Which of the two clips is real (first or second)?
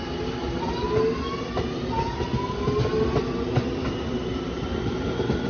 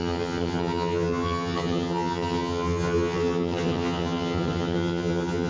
first